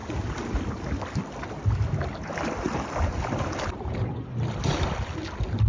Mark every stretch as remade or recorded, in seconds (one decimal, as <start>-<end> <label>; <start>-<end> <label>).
0.0-5.7 recorded